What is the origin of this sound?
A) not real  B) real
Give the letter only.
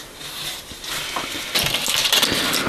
B